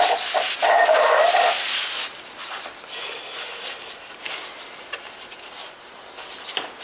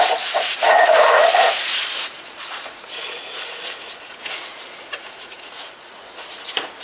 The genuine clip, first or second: first